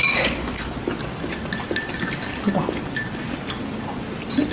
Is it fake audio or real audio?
real